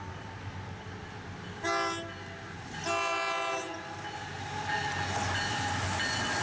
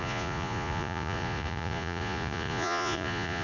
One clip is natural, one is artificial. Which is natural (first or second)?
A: first